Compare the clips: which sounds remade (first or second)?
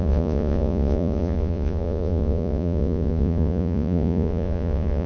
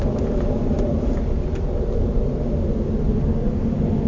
first